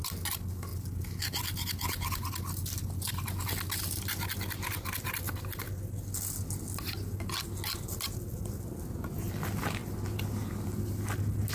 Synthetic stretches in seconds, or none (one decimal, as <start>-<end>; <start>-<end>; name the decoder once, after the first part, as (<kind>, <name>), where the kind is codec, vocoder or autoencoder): none